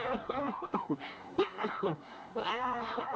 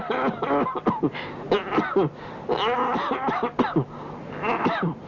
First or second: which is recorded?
second